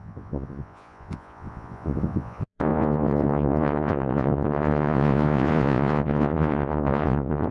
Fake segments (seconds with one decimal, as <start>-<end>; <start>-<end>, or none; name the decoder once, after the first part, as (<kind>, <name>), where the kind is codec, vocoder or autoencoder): 0.0-7.5 (vocoder, Vocos)